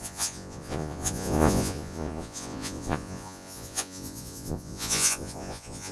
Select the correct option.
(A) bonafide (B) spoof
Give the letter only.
B